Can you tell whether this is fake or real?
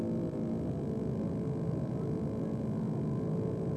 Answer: real